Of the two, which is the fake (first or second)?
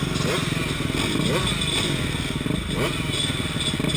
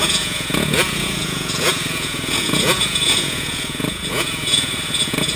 second